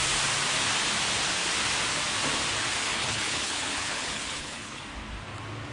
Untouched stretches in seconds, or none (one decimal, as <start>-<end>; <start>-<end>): 0.0-2.9; 4.8-5.7